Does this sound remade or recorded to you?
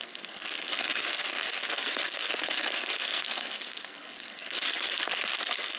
remade